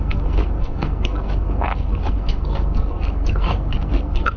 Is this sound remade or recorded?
remade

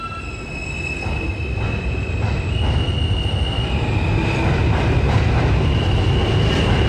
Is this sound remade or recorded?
recorded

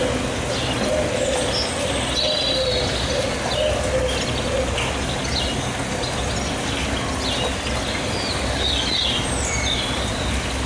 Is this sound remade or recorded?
recorded